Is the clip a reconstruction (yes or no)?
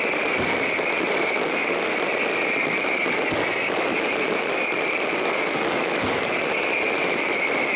no